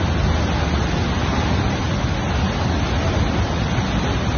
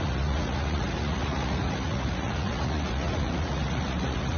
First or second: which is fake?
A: second